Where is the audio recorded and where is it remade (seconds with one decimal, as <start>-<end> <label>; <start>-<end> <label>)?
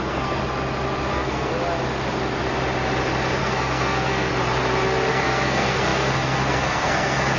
0.0-0.4 remade; 0.4-1.1 recorded; 1.1-1.5 remade; 1.5-3.4 recorded; 3.4-4.3 remade; 4.3-5.1 recorded; 5.1-7.4 remade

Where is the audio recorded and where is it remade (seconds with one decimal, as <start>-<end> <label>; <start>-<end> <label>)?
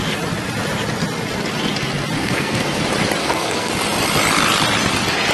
0.0-2.2 recorded; 2.2-2.8 remade; 2.8-3.2 recorded; 3.2-3.7 remade; 3.7-5.3 recorded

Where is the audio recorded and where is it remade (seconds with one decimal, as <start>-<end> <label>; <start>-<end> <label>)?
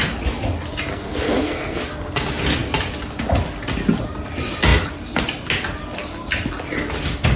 0.0-0.9 recorded; 0.9-1.8 remade; 1.8-7.4 recorded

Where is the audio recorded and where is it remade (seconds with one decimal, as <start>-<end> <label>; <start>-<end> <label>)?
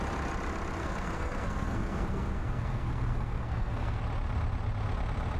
0.0-0.8 recorded; 0.8-4.0 remade; 4.0-5.4 recorded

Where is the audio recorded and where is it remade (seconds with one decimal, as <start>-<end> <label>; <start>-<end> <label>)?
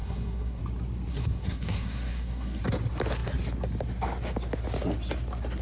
0.0-0.6 remade; 0.6-1.1 recorded; 1.1-2.6 remade; 2.6-5.6 recorded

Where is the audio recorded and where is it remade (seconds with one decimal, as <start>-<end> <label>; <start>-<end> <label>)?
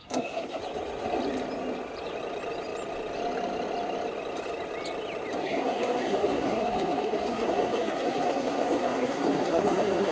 0.0-0.6 remade; 0.6-5.4 recorded; 5.4-10.1 remade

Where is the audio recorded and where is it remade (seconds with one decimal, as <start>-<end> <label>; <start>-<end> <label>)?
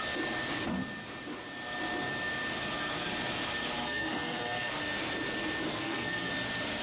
0.0-3.8 recorded; 3.8-4.8 remade; 4.8-5.7 recorded; 5.7-6.3 remade; 6.3-6.8 recorded